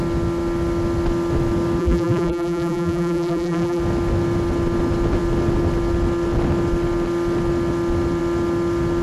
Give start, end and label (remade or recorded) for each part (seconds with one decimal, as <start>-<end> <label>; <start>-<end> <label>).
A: 0.0-1.8 recorded; 1.8-3.8 remade; 3.8-9.0 recorded